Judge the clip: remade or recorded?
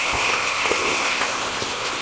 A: remade